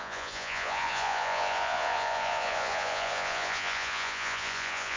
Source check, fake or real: fake